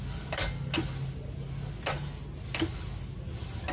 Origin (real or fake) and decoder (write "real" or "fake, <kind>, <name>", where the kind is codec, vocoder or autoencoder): real